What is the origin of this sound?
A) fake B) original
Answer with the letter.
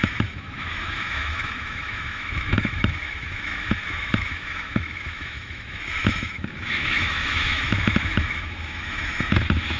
A